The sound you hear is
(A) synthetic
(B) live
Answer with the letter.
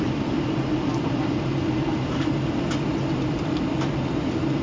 A